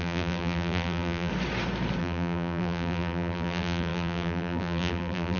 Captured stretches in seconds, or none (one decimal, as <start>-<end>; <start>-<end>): 1.3-2.0